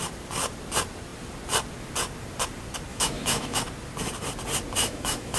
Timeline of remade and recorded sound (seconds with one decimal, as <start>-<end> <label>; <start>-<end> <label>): 0.0-2.9 recorded; 2.9-3.6 remade; 3.6-4.8 recorded; 4.8-5.4 remade